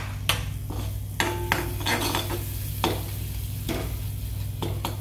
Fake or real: real